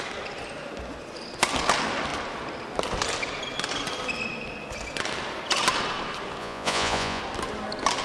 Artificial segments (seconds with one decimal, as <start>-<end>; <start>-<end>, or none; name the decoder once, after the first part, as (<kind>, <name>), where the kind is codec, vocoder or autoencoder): 6.4-7.2 (vocoder, Vocos)